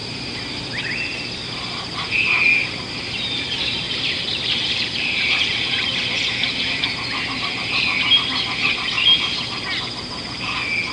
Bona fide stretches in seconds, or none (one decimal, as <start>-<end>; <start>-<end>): 0.0-1.1; 6.0-10.9